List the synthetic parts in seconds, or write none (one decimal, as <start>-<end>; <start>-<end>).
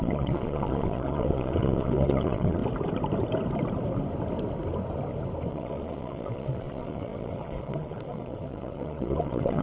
0.0-2.6; 5.5-9.6